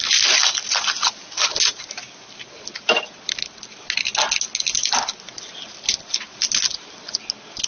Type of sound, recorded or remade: recorded